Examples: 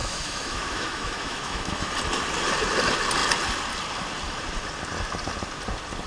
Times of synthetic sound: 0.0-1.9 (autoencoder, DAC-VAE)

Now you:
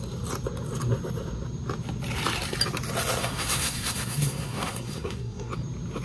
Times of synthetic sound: 3.2-5.5 (codec, SNAC)

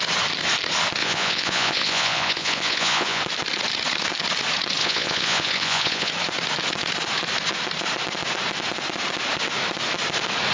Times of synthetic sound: 1.0-3.2 (vocoder, Vocos); 4.8-6.1

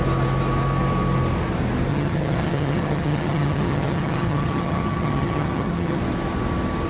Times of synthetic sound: 1.9-6.0 (vocoder, HiFi-GAN)

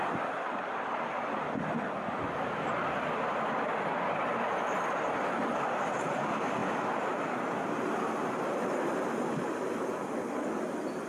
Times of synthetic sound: none

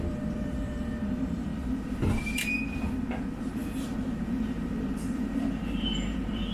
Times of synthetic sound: 0.0-1.5 (vocoder, BigVGAN v2); 3.4-6.5